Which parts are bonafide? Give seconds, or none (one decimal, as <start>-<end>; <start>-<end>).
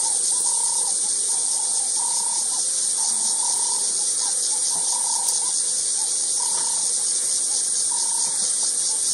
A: 0.0-1.7; 2.9-9.1